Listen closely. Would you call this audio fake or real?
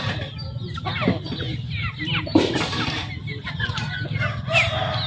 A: real